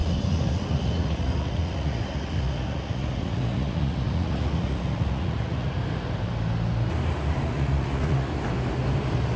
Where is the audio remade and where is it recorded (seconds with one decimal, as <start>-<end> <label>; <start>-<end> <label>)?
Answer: 0.0-5.8 remade; 5.8-7.4 recorded; 7.4-8.3 remade; 8.3-9.4 recorded